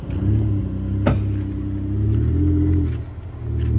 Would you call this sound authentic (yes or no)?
yes